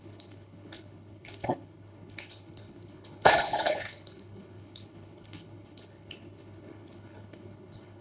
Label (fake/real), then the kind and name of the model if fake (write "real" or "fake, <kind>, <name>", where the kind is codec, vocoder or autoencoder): fake, codec, HILCodec